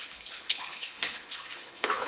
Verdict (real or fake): fake